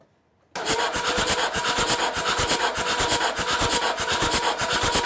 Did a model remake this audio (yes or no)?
no